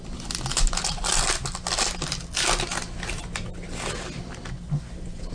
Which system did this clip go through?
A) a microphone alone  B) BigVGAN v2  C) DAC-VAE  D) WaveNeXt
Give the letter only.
A